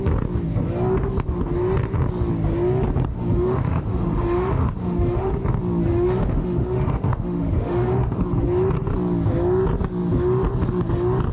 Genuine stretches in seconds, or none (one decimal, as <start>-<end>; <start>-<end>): 0.0-3.1; 5.3-5.9; 8.2-11.3